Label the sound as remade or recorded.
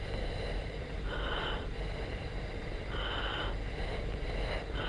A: recorded